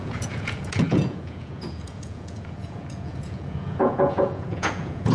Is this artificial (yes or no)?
yes